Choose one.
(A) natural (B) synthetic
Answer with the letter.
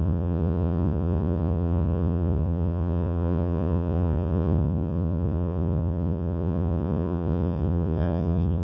B